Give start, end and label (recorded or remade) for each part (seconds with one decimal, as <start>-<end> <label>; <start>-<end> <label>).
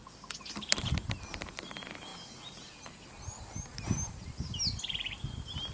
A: 0.0-2.1 remade; 2.1-4.8 recorded; 4.8-5.7 remade